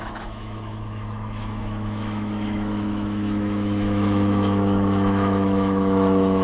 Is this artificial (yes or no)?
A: yes